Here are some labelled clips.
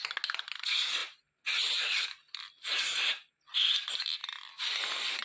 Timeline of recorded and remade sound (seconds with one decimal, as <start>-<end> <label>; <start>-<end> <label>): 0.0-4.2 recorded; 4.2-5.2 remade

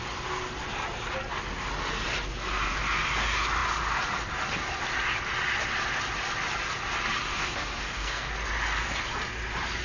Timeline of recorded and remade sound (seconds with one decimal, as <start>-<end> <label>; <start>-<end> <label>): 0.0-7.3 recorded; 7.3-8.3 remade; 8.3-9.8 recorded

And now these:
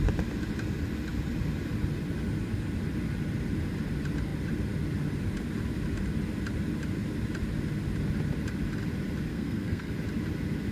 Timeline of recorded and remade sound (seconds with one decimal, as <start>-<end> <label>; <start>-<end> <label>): 0.0-9.3 recorded; 9.3-9.9 remade; 9.9-10.7 recorded

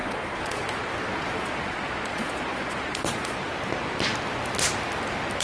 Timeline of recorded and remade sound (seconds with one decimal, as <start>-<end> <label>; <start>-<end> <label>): 0.0-0.9 remade; 0.9-1.3 recorded; 1.3-3.5 remade; 3.5-5.4 recorded

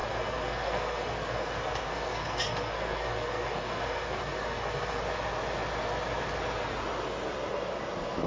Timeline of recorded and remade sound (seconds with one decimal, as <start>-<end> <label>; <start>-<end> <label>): 0.0-5.0 remade; 5.0-8.3 recorded

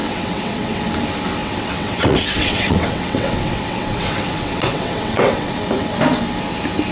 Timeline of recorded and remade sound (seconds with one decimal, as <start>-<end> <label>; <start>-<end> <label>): 0.0-0.8 remade; 0.8-1.4 recorded; 1.4-5.5 remade; 5.5-6.9 recorded

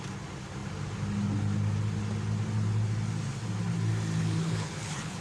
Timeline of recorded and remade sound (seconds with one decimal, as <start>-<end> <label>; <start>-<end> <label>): 0.0-4.2 recorded; 4.2-5.2 remade

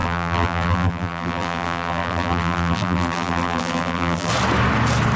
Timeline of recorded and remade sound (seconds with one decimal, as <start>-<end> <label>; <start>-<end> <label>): 0.0-4.3 remade; 4.3-5.2 recorded